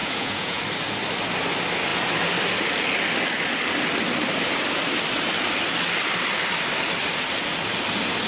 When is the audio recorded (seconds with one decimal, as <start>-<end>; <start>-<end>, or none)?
0.6-8.3